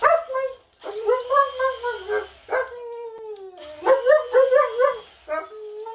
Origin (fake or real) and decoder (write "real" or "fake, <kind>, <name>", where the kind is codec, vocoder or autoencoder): real